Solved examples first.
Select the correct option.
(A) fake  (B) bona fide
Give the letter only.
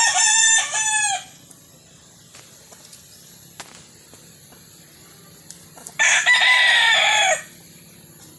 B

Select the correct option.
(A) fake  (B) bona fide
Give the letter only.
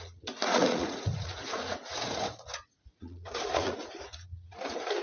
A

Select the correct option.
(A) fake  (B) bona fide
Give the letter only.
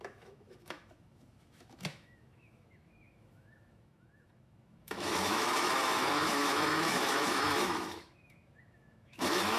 A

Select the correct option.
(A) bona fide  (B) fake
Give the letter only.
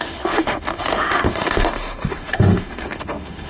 B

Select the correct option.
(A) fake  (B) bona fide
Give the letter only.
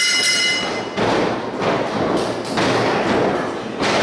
B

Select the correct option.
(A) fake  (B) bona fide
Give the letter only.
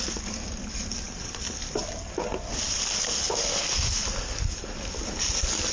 B